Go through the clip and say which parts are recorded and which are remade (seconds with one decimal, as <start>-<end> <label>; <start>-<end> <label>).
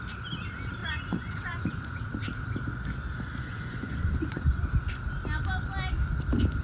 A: 0.0-0.8 recorded; 0.8-2.0 remade; 2.0-3.4 recorded; 3.4-4.7 remade; 4.7-6.6 recorded